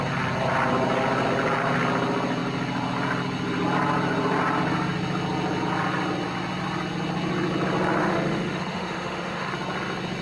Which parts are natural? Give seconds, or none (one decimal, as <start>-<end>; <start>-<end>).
0.0-8.0; 9.5-10.2